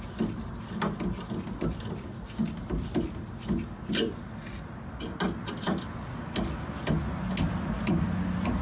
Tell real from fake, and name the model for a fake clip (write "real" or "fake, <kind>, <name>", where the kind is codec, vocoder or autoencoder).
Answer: real